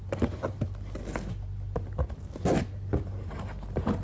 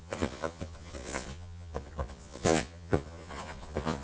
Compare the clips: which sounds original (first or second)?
first